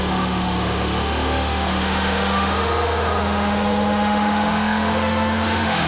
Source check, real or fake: fake